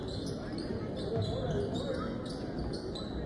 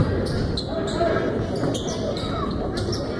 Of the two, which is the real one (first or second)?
first